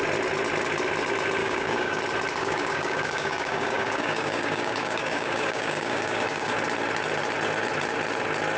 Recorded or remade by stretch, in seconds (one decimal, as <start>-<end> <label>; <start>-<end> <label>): 0.0-1.4 recorded; 1.4-2.0 remade; 2.0-2.4 recorded; 2.4-6.5 remade; 6.5-8.6 recorded